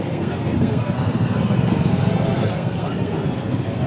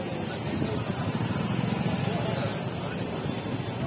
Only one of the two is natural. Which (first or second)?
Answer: second